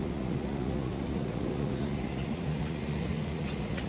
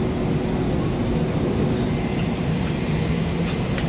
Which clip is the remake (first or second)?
first